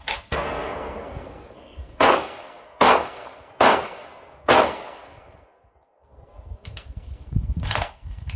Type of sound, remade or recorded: remade